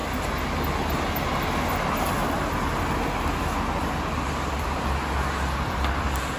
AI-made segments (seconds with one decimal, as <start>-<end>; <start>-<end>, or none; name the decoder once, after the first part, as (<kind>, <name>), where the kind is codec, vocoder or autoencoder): none